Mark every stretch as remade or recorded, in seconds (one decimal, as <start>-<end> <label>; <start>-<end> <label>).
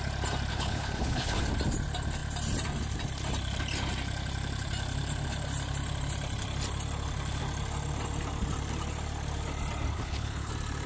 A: 0.0-0.5 recorded; 0.5-1.4 remade; 1.4-9.9 recorded; 9.9-10.5 remade; 10.5-10.9 recorded